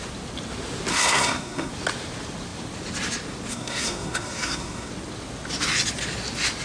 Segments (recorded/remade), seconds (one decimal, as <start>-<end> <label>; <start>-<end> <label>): 0.0-0.9 recorded; 0.9-1.7 remade; 1.7-3.5 recorded; 3.5-4.9 remade; 4.9-6.6 recorded